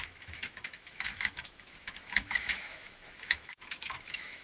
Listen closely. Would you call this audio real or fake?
fake